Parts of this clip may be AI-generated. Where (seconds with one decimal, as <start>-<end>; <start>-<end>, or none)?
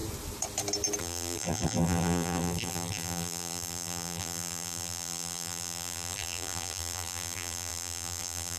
1.0-8.6